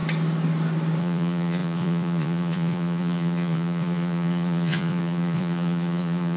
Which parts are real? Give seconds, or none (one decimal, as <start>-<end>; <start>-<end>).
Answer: 0.0-1.0